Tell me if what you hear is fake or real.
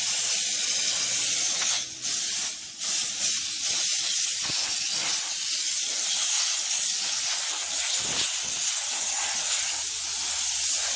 real